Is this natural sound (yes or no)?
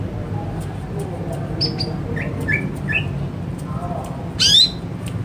yes